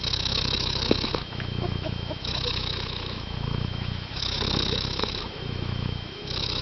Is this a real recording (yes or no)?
no